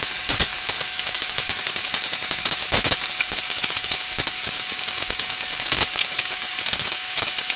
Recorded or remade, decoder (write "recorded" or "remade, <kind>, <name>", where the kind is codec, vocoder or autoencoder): remade, codec, DAC